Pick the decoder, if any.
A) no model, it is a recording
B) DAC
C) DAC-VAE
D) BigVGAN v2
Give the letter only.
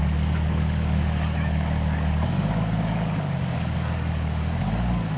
B